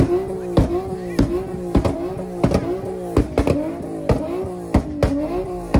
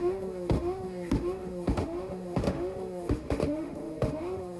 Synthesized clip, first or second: second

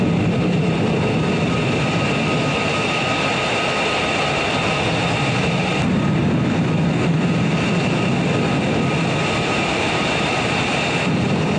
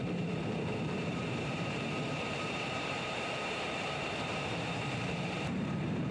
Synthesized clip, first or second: second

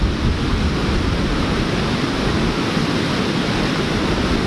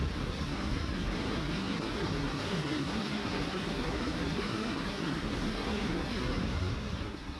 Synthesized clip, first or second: second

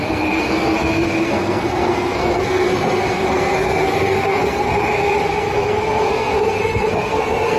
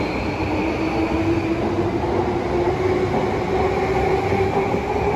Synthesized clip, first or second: first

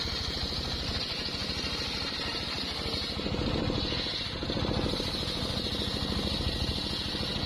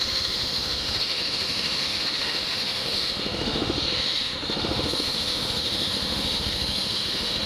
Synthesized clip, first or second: second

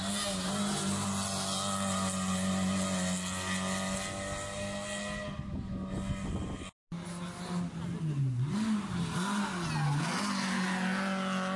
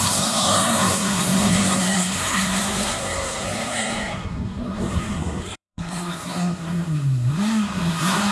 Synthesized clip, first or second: second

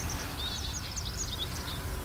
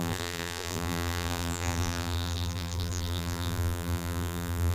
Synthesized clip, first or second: second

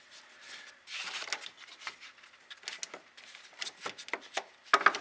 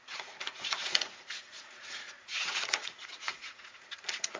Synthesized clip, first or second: second